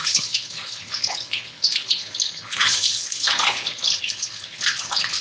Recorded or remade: remade